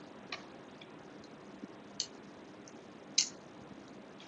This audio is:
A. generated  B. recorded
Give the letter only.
B